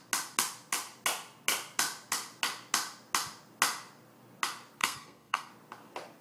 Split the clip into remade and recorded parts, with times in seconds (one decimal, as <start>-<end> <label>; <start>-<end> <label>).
0.0-4.8 recorded; 4.8-5.5 remade; 5.5-6.2 recorded